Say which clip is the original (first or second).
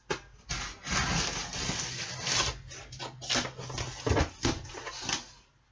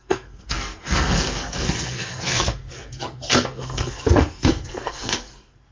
first